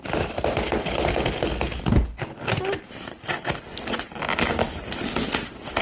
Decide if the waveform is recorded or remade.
recorded